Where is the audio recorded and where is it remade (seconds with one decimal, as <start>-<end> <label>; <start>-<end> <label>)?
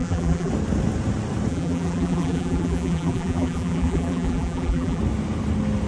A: 0.0-0.5 remade; 0.5-1.5 recorded; 1.5-5.0 remade; 5.0-5.9 recorded